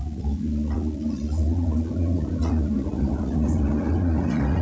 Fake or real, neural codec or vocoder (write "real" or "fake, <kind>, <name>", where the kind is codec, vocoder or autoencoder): fake, vocoder, Vocos